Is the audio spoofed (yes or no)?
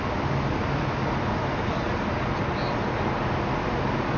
no